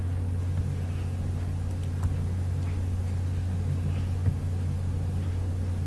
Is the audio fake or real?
real